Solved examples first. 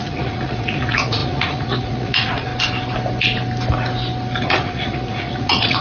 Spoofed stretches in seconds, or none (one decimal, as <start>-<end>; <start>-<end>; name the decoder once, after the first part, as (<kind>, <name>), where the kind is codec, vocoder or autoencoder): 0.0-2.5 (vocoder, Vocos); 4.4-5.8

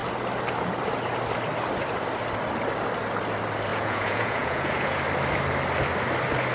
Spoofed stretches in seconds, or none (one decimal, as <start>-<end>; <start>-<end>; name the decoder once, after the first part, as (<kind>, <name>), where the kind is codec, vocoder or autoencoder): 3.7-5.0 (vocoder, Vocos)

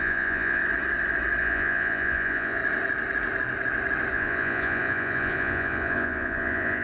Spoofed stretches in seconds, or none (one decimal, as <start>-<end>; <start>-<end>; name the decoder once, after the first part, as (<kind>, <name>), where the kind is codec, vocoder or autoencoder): 0.0-0.6 (vocoder, Vocos); 1.4-2.6; 4.1-6.8